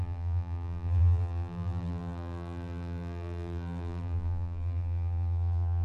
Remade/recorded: remade